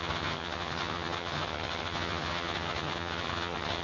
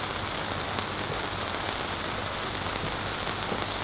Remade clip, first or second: first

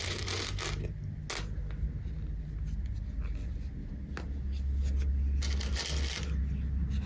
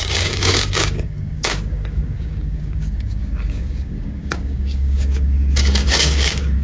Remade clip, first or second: second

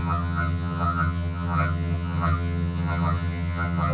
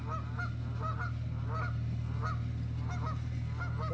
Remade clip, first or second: first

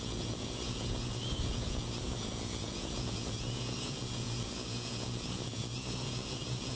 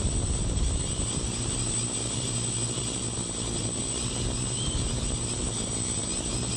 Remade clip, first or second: first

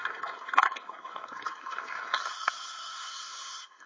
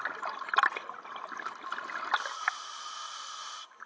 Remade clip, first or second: first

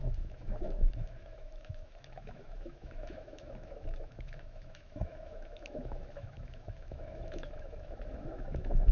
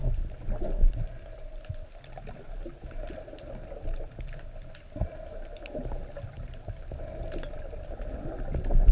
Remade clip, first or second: first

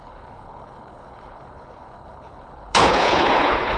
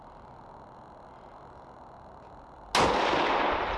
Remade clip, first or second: first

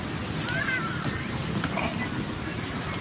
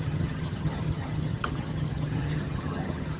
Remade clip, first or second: second